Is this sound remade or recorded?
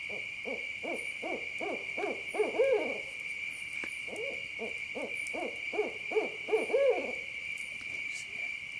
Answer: recorded